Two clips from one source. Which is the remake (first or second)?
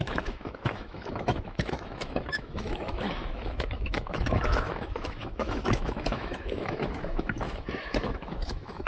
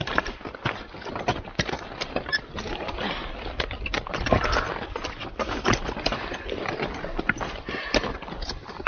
first